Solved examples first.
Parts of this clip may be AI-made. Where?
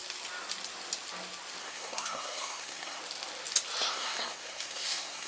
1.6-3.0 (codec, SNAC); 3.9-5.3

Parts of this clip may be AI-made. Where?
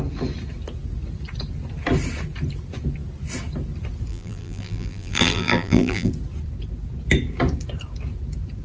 4.1-6.1 (vocoder, BigVGAN v2)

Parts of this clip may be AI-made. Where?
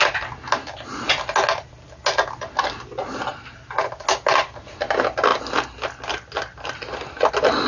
none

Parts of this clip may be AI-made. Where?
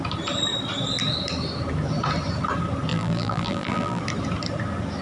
2.9-4.0 (vocoder, BigVGAN v2)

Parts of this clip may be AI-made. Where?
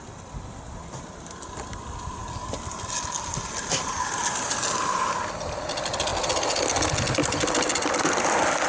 none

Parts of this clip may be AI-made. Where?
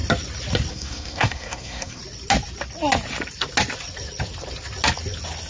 0.7-2.0 (codec, SNAC)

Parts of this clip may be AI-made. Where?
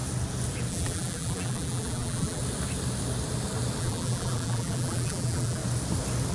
0.7-2.4 (vocoder, BigVGAN v2); 3.8-5.6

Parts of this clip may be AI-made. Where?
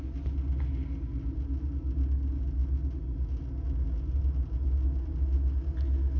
none